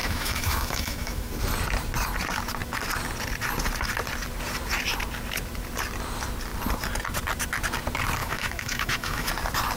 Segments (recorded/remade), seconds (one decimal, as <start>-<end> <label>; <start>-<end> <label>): 0.0-1.3 remade; 1.3-8.2 recorded; 8.2-9.3 remade; 9.3-9.8 recorded